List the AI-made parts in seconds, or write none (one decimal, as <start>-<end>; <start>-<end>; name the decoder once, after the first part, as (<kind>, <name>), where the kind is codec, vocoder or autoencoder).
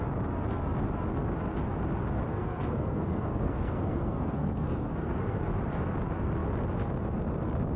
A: 2.3-5.4 (codec, SNAC)